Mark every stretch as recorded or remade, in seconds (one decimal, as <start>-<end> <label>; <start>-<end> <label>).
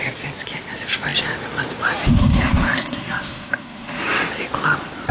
0.0-2.1 recorded; 2.1-4.0 remade; 4.0-5.1 recorded